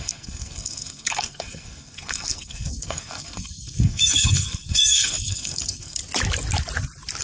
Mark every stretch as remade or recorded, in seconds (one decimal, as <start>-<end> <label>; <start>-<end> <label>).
0.0-6.0 remade; 6.0-7.2 recorded